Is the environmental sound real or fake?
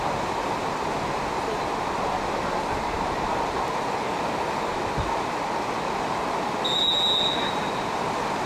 real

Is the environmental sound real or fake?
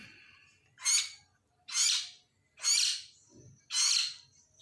real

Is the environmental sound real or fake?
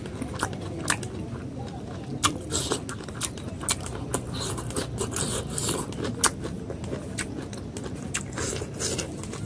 real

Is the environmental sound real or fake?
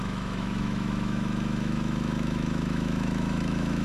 fake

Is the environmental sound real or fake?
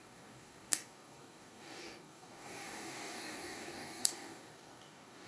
fake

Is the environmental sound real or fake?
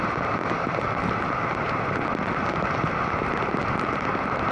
real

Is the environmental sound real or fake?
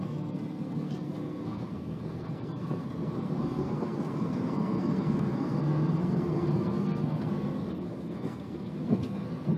fake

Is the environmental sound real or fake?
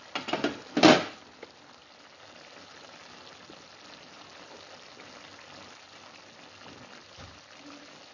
real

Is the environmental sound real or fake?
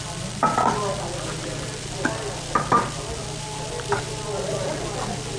fake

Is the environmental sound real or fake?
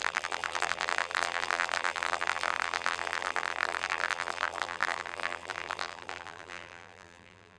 fake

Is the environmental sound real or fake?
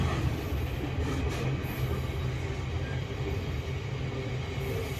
real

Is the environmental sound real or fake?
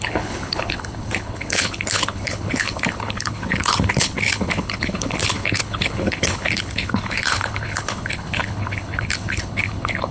fake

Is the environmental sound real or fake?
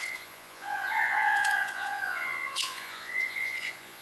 fake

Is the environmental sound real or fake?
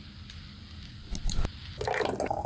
real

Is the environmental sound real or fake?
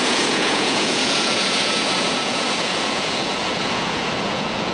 fake